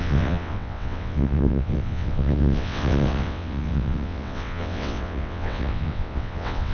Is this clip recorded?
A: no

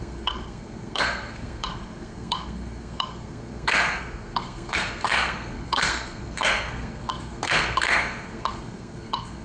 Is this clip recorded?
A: no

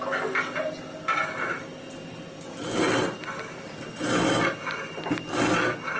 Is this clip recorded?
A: yes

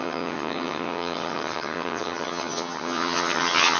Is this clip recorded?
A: no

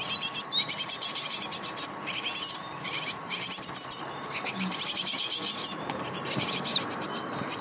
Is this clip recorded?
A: no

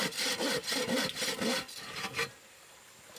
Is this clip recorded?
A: yes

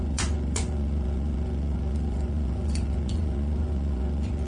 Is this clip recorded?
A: no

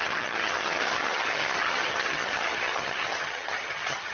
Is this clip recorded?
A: no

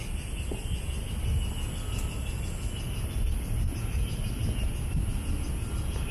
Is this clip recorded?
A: yes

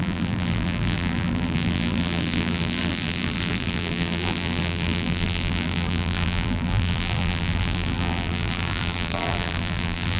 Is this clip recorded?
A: no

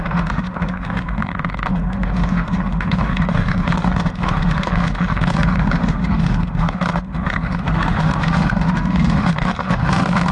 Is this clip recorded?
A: no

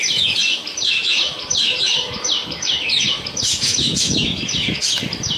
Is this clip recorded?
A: no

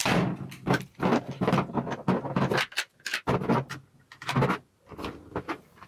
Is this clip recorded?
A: yes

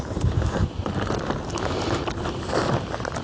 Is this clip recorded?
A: yes